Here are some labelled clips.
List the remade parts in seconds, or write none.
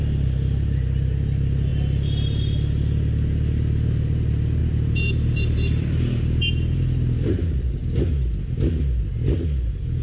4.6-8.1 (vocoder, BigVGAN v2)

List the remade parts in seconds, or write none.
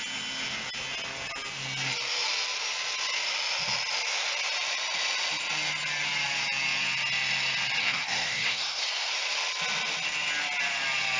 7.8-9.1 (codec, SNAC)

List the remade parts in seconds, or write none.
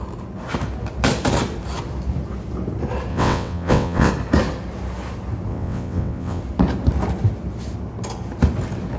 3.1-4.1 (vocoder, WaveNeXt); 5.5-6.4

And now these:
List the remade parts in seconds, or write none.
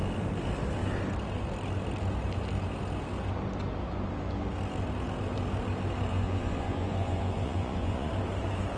6.1-8.1 (vocoder, Vocos)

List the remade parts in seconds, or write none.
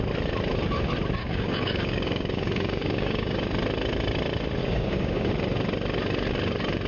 1.2-3.4 (codec, DAC); 4.6-5.3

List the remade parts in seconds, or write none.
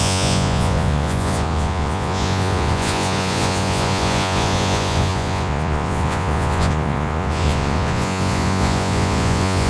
0.0-9.7 (vocoder, Vocos)